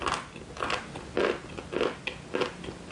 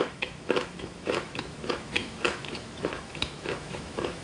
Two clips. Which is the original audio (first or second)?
first